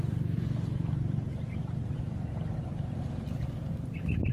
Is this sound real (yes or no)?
yes